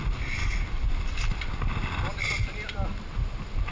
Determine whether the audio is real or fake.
real